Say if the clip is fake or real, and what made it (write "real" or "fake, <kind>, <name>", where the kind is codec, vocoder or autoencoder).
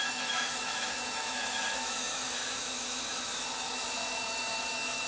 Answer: fake, autoencoder, DAC-VAE